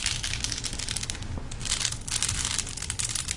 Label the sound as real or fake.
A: real